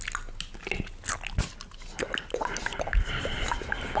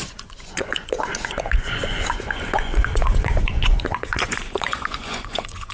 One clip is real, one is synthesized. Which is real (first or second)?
first